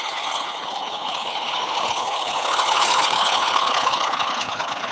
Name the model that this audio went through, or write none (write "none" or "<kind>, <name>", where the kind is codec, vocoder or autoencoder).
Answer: codec, HILCodec